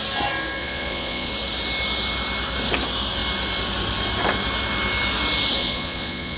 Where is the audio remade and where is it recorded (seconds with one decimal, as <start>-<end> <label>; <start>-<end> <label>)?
0.0-0.6 recorded; 0.6-1.3 remade; 1.3-5.6 recorded; 5.6-6.4 remade